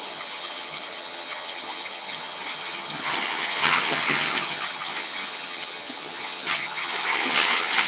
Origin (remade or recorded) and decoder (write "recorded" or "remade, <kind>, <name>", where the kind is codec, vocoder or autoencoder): remade, vocoder, HiFi-GAN